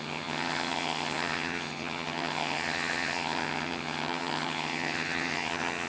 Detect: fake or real fake